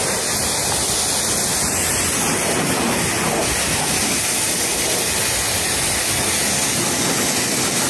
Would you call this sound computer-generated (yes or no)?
no